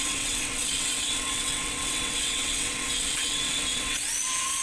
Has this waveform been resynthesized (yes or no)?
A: yes